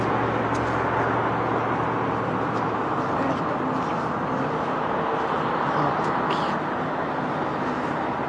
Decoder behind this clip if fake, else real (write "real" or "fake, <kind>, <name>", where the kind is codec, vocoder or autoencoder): real